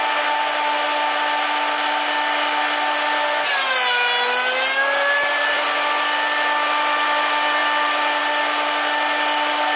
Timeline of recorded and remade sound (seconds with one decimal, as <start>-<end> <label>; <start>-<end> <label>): 0.0-9.8 recorded